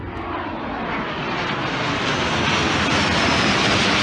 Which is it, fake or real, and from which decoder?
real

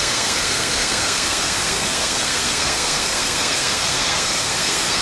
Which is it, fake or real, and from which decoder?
fake, codec, SNAC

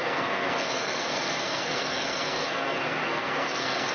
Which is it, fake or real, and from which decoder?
fake, codec, SNAC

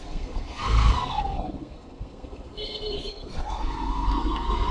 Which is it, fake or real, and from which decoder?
fake, codec, SNAC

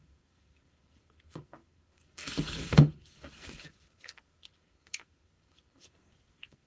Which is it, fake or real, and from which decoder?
fake, codec, SNAC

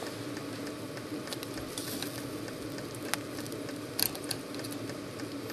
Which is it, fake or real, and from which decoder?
real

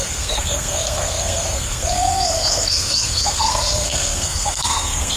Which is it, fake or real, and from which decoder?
fake, codec, SNAC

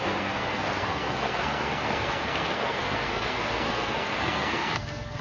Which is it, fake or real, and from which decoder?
fake, codec, SNAC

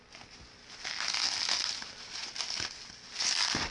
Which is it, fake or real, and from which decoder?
real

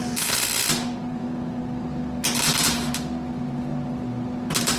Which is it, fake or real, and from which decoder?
real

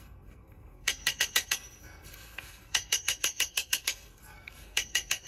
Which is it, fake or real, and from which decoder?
fake, codec, SNAC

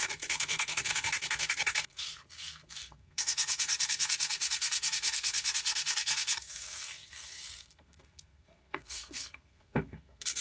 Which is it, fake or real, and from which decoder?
fake, codec, SNAC